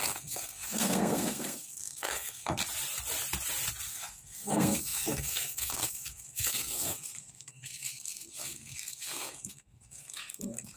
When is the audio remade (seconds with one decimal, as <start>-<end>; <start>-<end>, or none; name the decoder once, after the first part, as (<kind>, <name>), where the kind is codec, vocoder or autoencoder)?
0.0-2.6 (codec, SNAC); 3.9-10.8